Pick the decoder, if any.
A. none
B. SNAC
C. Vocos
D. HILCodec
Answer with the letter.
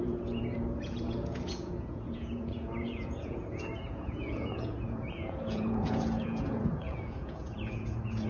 C